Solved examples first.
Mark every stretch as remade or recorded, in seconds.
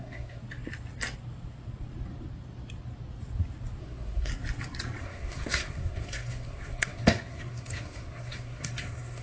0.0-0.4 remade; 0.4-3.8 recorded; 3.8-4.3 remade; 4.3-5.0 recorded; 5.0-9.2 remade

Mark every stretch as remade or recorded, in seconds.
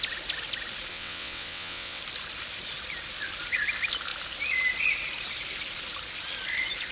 0.0-0.9 recorded; 0.9-2.0 remade; 2.0-6.9 recorded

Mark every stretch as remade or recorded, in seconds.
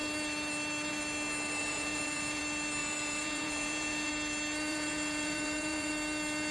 0.0-1.6 recorded; 1.6-2.4 remade; 2.4-2.8 recorded; 2.8-4.1 remade; 4.1-4.7 recorded; 4.7-5.9 remade; 5.9-6.5 recorded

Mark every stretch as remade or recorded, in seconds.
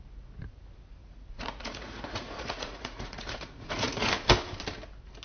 0.0-1.0 recorded; 1.0-4.1 remade; 4.1-5.2 recorded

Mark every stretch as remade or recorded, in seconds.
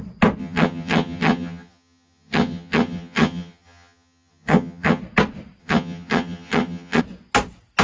0.0-0.4 recorded; 0.4-5.0 remade; 5.0-5.6 recorded; 5.6-7.0 remade; 7.0-7.8 recorded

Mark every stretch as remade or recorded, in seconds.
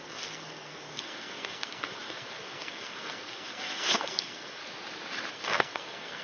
0.0-4.6 remade; 4.6-5.3 recorded; 5.3-6.2 remade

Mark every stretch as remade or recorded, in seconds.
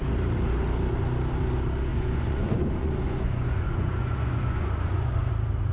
0.0-1.9 recorded; 1.9-5.3 remade; 5.3-5.7 recorded